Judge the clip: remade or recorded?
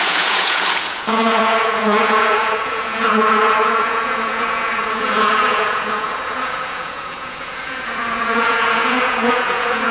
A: remade